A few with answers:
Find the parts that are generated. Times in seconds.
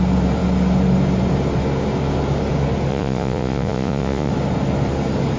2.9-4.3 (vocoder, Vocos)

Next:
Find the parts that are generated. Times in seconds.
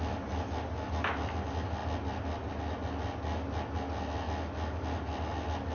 none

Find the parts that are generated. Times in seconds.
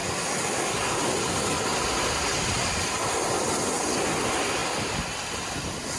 none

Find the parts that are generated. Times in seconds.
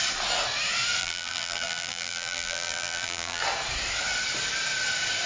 1.0-3.4 (vocoder, BigVGAN v2)